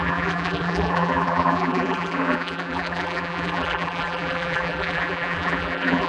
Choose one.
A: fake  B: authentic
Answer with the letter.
A